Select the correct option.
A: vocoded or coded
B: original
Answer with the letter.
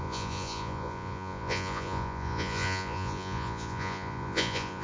A